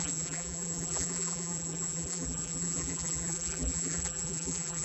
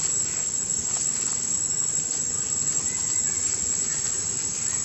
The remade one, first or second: first